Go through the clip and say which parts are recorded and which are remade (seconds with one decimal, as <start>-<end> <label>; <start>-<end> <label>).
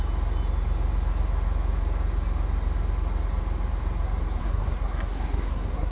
0.0-4.4 recorded; 4.4-5.9 remade